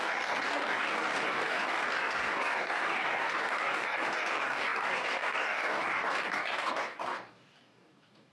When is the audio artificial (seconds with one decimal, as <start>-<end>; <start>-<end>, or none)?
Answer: 0.0-8.3